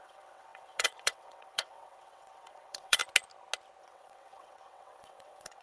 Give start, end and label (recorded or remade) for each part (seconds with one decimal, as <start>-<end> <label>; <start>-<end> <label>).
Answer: 0.0-3.0 remade; 3.0-3.8 recorded; 3.8-5.6 remade